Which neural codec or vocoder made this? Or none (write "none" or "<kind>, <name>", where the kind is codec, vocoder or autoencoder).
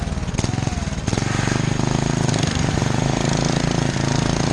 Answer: none